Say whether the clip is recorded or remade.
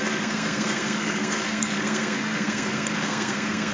remade